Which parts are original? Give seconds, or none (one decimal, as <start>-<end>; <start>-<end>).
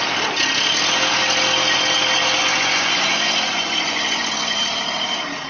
0.0-2.4; 4.6-5.5